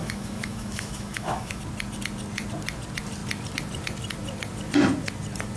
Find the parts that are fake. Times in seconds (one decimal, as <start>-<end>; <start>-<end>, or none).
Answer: 0.0-1.6